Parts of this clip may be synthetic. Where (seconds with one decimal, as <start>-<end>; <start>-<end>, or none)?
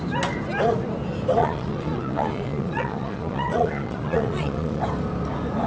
1.4-4.8